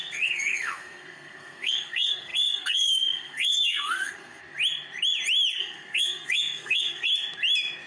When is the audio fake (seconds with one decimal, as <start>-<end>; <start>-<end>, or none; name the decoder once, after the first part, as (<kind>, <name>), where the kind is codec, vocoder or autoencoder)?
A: 0.0-4.4 (codec, SNAC); 5.6-7.1